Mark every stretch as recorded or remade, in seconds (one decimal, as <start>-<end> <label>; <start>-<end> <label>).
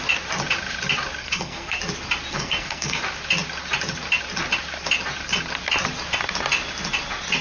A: 0.0-1.2 recorded; 1.2-1.8 remade; 1.8-2.3 recorded; 2.3-3.0 remade; 3.0-7.4 recorded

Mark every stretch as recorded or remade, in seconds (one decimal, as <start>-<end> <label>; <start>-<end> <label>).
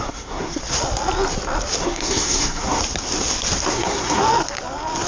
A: 0.0-0.6 remade; 0.6-1.8 recorded; 1.8-2.8 remade; 2.8-3.7 recorded; 3.7-4.2 remade; 4.2-5.1 recorded